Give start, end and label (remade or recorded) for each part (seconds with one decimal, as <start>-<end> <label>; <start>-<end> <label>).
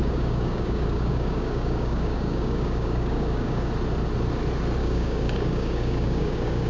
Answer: 0.0-3.7 remade; 3.7-4.8 recorded; 4.8-6.7 remade